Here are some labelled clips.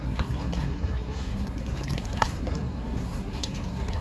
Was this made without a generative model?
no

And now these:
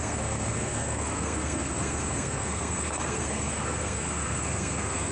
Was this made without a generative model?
no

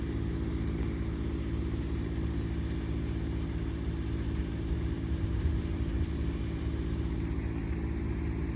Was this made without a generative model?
yes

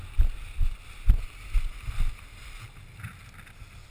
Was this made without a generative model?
yes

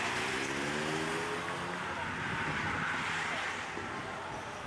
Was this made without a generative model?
yes